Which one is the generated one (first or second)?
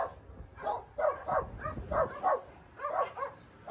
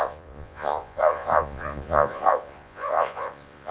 second